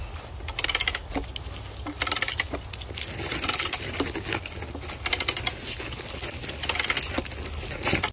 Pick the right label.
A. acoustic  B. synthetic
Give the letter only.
A